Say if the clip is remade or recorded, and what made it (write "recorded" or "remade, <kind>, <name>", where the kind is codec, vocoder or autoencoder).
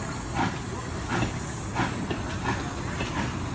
recorded